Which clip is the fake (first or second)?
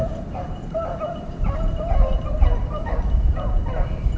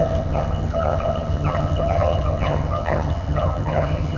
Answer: second